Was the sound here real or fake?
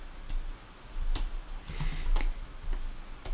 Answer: real